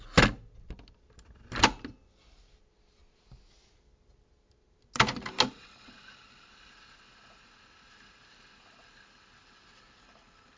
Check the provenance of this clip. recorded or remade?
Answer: recorded